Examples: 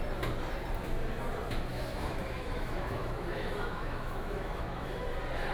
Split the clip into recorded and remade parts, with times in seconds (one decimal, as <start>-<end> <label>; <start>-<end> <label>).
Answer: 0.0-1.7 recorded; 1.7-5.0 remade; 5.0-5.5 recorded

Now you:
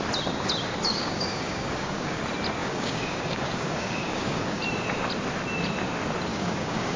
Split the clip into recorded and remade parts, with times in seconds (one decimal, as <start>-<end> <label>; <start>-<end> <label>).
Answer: 0.0-0.9 recorded; 0.9-2.2 remade; 2.2-2.6 recorded; 2.6-4.6 remade; 4.6-6.3 recorded; 6.3-7.0 remade

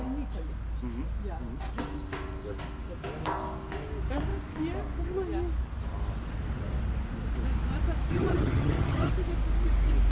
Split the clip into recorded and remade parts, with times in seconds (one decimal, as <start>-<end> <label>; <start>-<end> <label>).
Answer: 0.0-8.1 recorded; 8.1-9.1 remade; 9.1-10.1 recorded

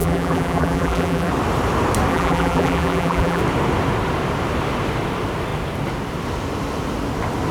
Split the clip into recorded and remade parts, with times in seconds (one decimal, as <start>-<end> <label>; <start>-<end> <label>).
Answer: 0.0-1.3 remade; 1.3-2.1 recorded; 2.1-3.4 remade; 3.4-7.5 recorded

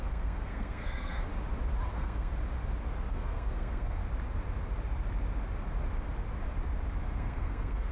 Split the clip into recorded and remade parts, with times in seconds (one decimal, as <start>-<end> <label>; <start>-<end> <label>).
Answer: 0.0-1.3 remade; 1.3-1.9 recorded; 1.9-2.3 remade; 2.3-3.1 recorded; 3.1-4.0 remade; 4.0-7.0 recorded; 7.0-7.9 remade

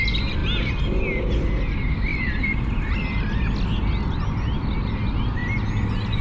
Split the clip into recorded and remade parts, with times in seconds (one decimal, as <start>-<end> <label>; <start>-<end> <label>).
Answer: 0.0-2.1 recorded; 2.1-3.2 remade; 3.2-6.2 recorded